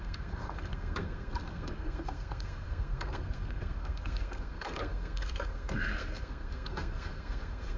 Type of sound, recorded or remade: remade